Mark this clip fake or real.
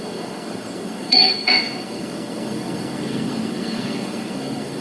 fake